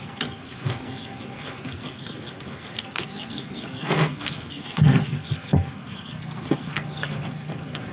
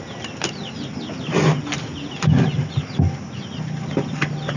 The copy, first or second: first